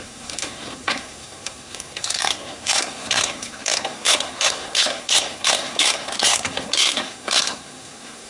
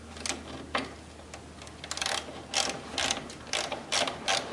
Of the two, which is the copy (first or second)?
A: first